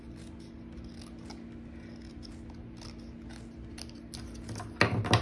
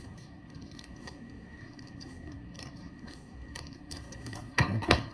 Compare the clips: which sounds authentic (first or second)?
first